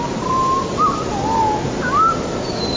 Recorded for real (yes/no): yes